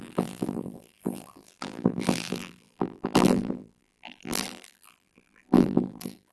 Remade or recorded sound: remade